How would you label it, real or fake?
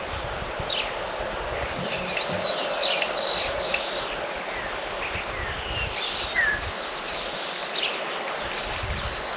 real